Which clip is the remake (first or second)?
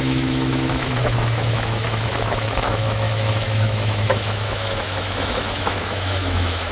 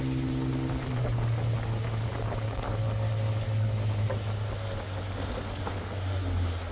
first